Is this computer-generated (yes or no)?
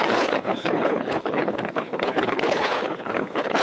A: yes